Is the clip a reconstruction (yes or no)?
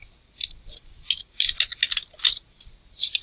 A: no